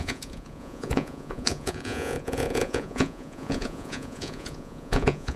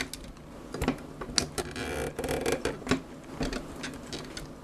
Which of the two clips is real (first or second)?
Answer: second